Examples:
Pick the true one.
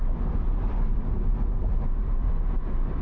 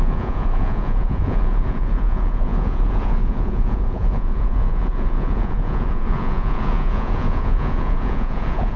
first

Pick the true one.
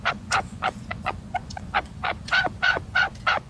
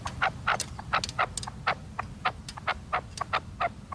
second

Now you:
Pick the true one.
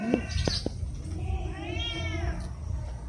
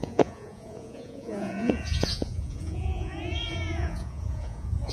first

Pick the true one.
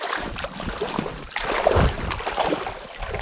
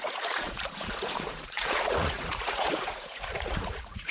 first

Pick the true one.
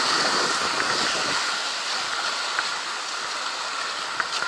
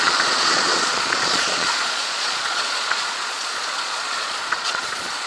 first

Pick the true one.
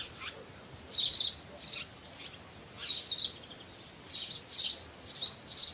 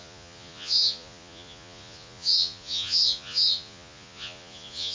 first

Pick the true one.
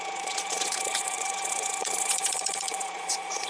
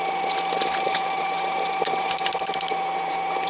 second